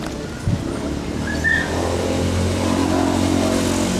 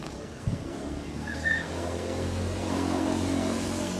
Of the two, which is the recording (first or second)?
first